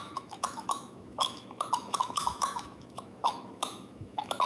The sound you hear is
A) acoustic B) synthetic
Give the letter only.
B